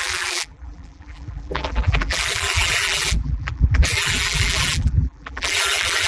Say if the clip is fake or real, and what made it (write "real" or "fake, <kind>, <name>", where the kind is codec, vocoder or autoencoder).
fake, vocoder, BigVGAN v2